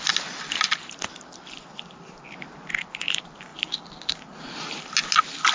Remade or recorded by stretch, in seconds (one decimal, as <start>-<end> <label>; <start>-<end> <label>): 0.0-5.5 recorded

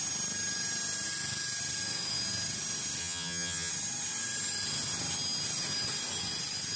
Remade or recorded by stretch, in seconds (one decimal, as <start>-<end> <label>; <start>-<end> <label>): 0.0-3.0 recorded; 3.0-3.7 remade; 3.7-6.8 recorded

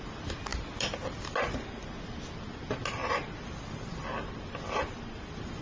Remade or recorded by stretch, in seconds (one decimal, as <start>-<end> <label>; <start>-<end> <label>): 0.0-5.6 recorded

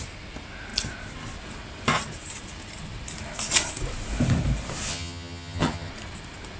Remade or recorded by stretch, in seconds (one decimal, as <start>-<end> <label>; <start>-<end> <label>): 0.0-4.9 recorded; 4.9-5.9 remade; 5.9-6.6 recorded

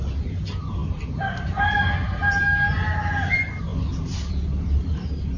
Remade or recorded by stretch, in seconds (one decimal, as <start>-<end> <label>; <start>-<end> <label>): 0.0-5.4 recorded